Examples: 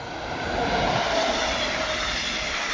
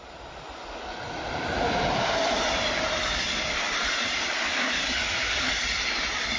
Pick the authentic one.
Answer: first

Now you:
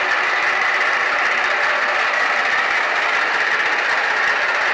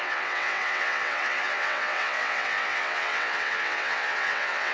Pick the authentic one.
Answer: first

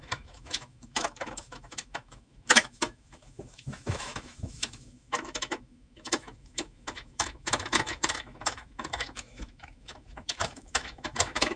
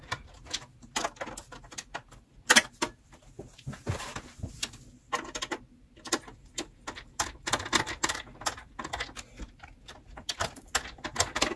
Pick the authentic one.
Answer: second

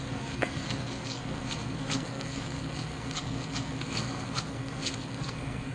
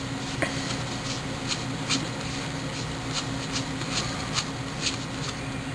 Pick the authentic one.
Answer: second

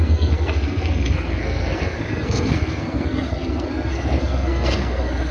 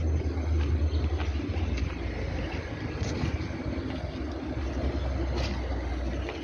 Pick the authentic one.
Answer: second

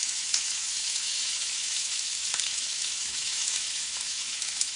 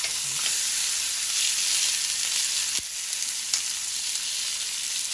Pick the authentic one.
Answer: second